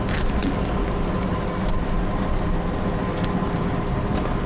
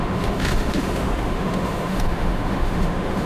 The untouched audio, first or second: first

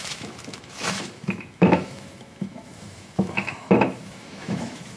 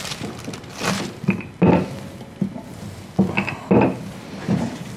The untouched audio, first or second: second